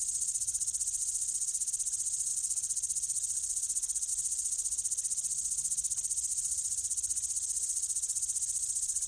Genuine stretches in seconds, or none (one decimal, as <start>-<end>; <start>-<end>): 0.0-1.0; 1.7-2.3; 4.1-6.3; 7.0-9.1